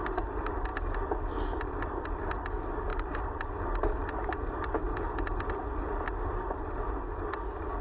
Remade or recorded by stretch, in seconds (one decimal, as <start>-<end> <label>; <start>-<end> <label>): 0.0-7.8 recorded

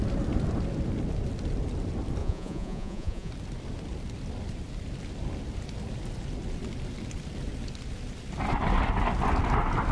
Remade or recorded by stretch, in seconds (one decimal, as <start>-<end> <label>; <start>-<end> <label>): 0.0-2.2 recorded; 2.2-3.3 remade; 3.3-9.9 recorded